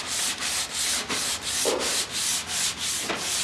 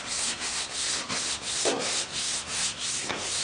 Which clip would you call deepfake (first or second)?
second